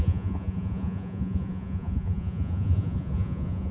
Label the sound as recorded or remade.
remade